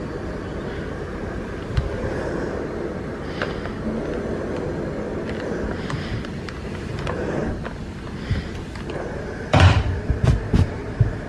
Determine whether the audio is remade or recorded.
remade